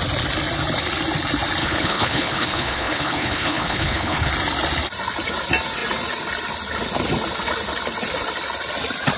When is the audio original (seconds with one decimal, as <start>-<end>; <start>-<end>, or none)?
0.0-1.6; 4.3-9.2

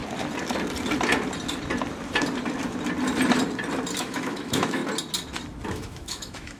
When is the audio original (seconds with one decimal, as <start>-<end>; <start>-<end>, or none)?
0.0-4.0; 4.8-5.7

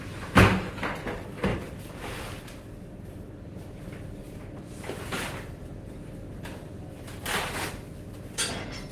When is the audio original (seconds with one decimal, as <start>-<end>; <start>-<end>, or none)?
0.0-1.5; 3.5-4.2; 5.6-6.6; 7.7-8.9

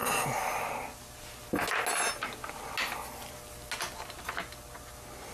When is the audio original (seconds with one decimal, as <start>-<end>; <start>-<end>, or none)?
0.0-5.3

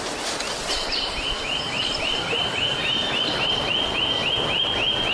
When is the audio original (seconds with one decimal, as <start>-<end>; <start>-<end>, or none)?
0.0-0.6; 3.3-5.1

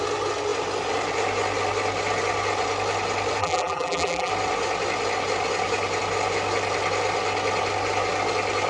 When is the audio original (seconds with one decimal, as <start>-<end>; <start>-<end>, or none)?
0.0-3.4; 4.3-8.7